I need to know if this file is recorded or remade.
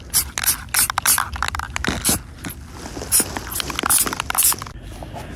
recorded